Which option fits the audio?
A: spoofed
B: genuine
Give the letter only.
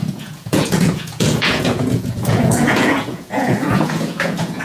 A